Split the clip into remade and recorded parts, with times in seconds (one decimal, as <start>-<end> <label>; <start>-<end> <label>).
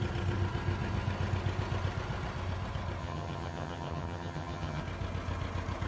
0.0-3.0 recorded; 3.0-4.8 remade; 4.8-5.9 recorded